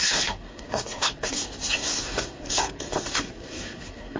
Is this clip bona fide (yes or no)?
no